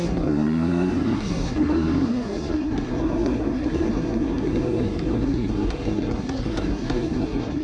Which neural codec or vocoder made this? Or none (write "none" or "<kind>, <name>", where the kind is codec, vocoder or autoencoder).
codec, SNAC